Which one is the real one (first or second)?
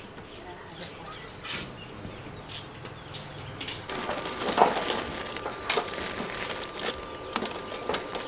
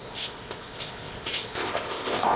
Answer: first